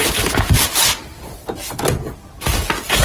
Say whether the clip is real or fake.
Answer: real